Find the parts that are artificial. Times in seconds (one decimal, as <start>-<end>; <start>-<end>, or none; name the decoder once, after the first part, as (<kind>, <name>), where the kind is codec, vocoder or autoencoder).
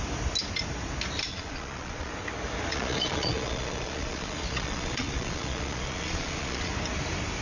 1.3-2.1 (vocoder, Vocos); 2.7-6.7